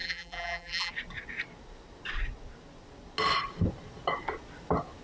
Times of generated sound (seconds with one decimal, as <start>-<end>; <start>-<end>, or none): 0.0-0.9